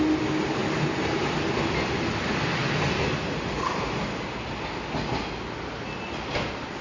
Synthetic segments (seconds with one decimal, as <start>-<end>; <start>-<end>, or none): 0.6-1.5